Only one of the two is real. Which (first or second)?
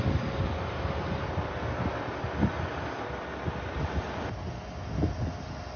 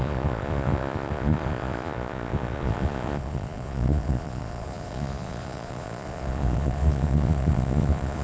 first